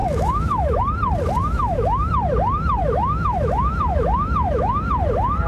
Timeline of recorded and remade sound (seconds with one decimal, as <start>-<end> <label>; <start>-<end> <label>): 0.0-0.8 remade; 0.8-1.4 recorded; 1.4-2.1 remade; 2.1-2.8 recorded; 2.8-4.9 remade; 4.9-5.5 recorded